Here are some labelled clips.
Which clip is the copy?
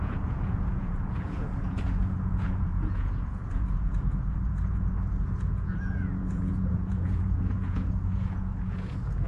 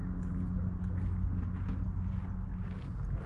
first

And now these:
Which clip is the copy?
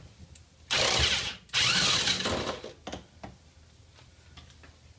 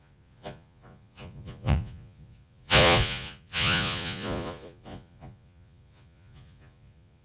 second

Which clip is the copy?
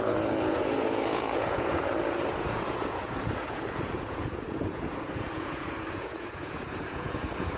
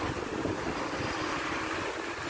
first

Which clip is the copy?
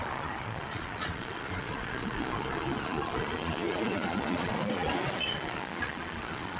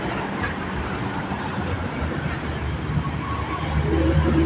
first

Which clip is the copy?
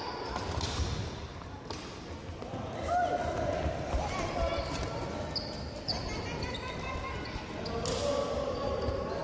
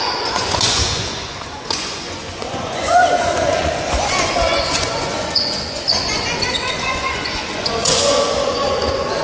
second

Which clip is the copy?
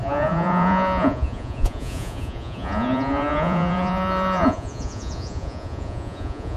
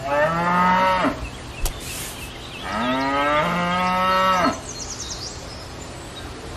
first